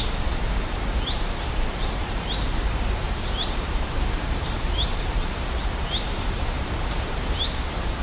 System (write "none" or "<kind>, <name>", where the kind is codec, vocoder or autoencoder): vocoder, BigVGAN v2